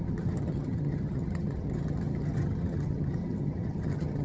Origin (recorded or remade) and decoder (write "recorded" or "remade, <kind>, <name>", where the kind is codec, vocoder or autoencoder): remade, vocoder, HiFi-GAN